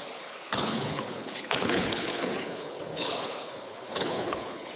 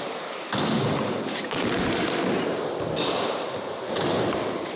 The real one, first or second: second